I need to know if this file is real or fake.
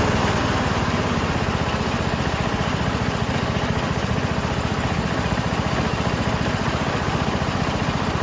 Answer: fake